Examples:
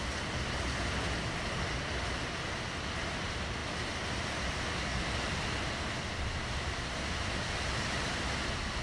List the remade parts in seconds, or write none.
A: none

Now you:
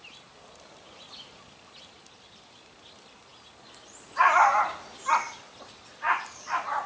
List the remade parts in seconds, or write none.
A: none

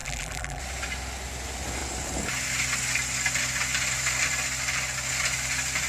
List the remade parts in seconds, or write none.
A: 0.0-0.6 (vocoder, BigVGAN v2)

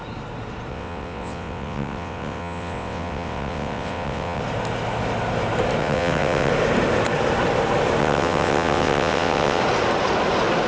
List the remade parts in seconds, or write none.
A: 0.7-4.4 (vocoder, WaveNeXt); 5.8-6.5; 8.0-9.6

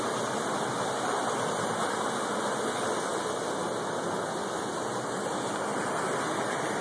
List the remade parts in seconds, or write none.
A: none

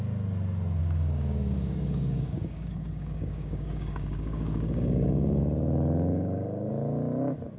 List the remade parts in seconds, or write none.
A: 0.8-5.4 (codec, DAC); 6.1-6.7

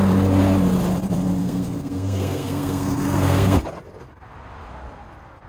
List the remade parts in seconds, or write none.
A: 1.4-3.6 (codec, SNAC)

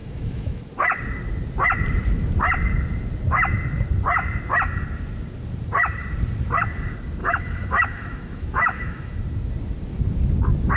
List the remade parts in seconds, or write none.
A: 0.0-0.6 (autoencoder, DAC-VAE); 7.2-9.2